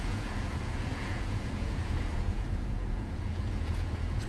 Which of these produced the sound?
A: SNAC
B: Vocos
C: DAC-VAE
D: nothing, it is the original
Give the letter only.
B